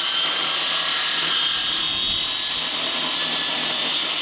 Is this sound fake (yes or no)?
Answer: no